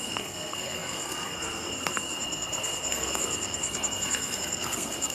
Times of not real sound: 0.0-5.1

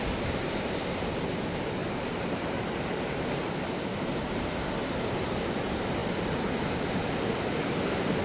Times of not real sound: none